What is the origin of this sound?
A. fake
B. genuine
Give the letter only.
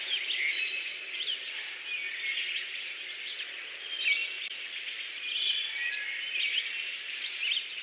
B